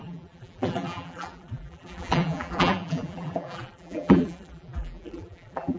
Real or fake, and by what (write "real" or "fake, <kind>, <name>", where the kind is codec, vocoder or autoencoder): fake, vocoder, BigVGAN v2